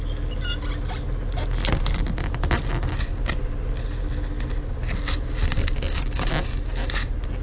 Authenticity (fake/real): real